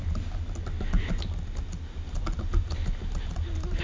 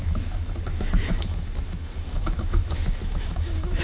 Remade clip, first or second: second